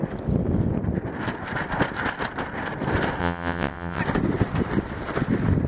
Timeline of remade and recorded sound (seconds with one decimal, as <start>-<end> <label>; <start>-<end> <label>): 0.0-3.2 recorded; 3.2-4.0 remade; 4.0-5.7 recorded